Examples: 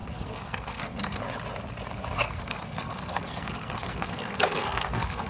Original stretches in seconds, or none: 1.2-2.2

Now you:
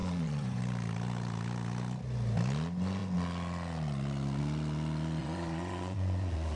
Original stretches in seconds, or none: 0.6-5.2

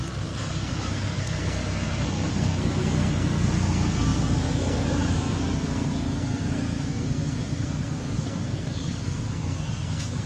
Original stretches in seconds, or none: none

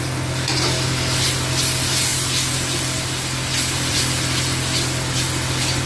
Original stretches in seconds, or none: 0.0-5.9

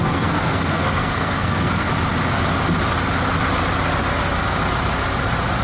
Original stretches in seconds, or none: 1.9-5.6

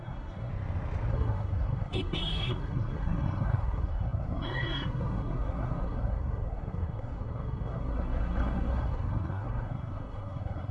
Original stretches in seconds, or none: 0.5-1.1

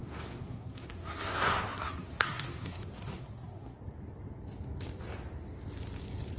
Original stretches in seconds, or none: 3.8-6.4

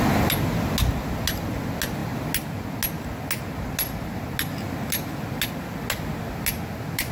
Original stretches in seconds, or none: 0.0-7.1